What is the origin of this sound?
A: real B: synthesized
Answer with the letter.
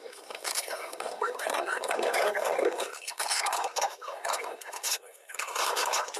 B